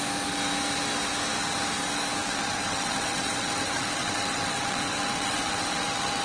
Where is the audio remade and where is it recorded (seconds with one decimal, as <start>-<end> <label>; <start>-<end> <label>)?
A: 0.0-2.2 recorded; 2.2-6.2 remade